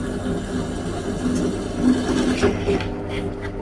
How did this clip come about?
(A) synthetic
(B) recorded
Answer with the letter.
B